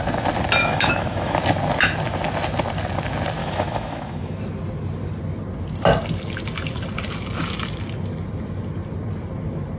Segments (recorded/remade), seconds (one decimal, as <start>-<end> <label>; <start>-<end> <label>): 0.0-0.6 recorded; 0.6-1.4 remade; 1.4-3.4 recorded; 3.4-4.4 remade; 4.4-9.8 recorded